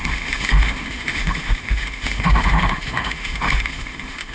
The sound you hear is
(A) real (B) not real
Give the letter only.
B